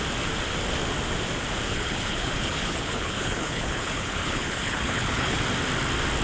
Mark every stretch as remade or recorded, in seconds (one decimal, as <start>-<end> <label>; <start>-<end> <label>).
0.0-1.7 recorded; 1.7-5.4 remade; 5.4-6.2 recorded

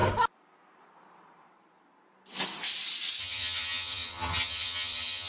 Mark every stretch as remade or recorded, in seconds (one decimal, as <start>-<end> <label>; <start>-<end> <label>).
0.0-3.2 recorded; 3.2-5.3 remade

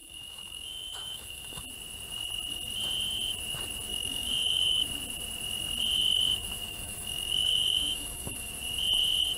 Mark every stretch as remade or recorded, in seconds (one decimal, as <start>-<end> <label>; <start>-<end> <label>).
0.0-1.6 remade; 1.6-3.9 recorded; 3.9-4.9 remade; 4.9-6.4 recorded; 6.4-8.5 remade; 8.5-9.4 recorded

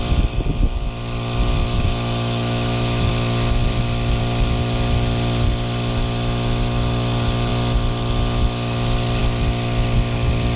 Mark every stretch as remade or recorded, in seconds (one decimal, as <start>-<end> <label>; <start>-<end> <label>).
0.0-1.6 recorded; 1.6-3.1 remade; 3.1-10.6 recorded

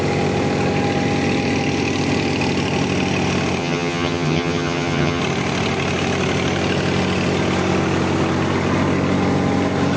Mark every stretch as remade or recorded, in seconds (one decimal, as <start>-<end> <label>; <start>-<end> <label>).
0.0-3.6 recorded; 3.6-5.2 remade; 5.2-10.0 recorded

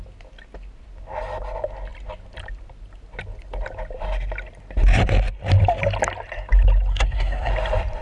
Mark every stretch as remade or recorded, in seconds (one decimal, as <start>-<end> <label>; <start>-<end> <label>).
0.0-6.9 recorded; 6.9-7.5 remade; 7.5-8.0 recorded